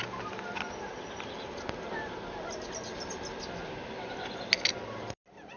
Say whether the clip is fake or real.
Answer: real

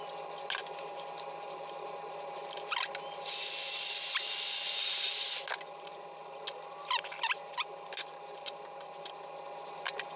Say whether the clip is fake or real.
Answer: real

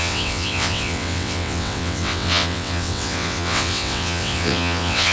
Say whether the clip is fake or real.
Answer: fake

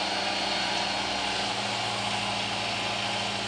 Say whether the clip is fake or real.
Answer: real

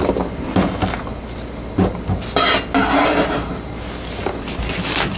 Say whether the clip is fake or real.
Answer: real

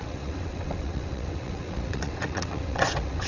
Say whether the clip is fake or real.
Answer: fake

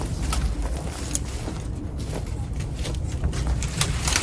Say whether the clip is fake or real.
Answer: real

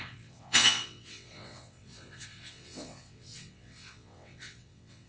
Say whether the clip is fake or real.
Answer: fake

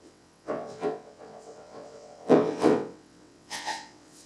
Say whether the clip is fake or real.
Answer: fake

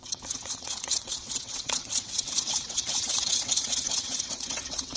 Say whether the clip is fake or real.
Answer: fake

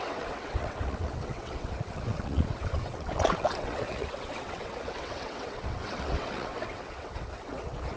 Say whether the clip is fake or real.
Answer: fake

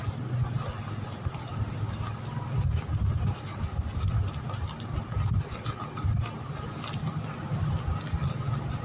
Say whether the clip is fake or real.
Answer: real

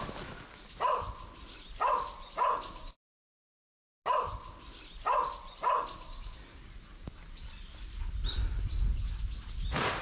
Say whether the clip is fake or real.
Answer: real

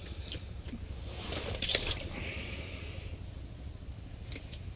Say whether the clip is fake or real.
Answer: real